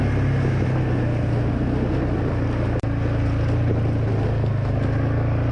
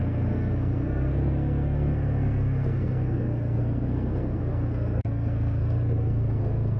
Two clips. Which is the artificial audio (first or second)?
second